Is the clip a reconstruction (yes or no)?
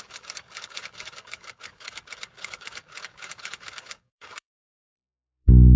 yes